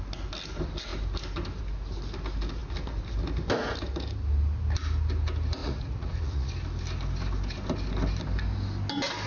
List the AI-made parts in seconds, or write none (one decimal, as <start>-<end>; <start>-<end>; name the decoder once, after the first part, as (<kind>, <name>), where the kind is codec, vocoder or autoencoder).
5.6-6.5 (vocoder, Vocos)

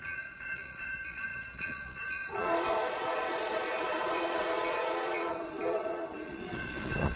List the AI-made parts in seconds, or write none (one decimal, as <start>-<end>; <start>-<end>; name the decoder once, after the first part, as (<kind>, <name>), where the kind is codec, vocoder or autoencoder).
0.0-7.2 (vocoder, Vocos)

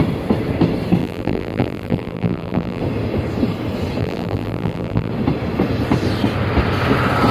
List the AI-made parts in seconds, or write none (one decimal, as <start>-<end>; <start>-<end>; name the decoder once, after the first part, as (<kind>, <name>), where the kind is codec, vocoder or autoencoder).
1.0-2.8 (vocoder, BigVGAN v2); 4.0-5.1

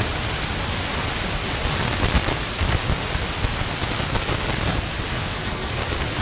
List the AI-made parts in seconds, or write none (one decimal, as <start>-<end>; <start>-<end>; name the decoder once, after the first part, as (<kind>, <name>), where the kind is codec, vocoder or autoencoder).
5.1-5.8 (codec, SNAC)

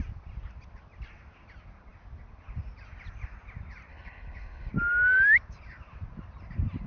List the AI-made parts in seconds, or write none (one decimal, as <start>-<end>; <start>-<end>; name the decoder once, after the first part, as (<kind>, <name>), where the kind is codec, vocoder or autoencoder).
3.9-4.7 (codec, HILCodec)